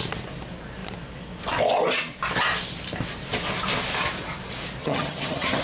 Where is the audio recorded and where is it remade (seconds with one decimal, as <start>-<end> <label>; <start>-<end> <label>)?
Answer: 0.0-4.8 recorded; 4.8-5.6 remade